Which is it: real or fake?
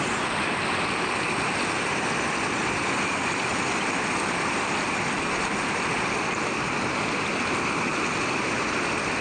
real